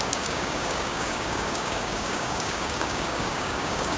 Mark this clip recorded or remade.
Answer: remade